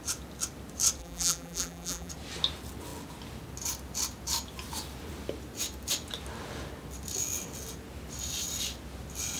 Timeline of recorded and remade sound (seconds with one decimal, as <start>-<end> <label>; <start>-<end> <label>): 0.0-1.0 recorded; 1.0-2.1 remade; 2.1-9.4 recorded